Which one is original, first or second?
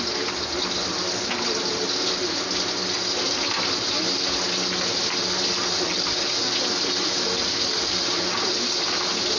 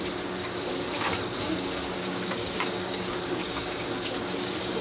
first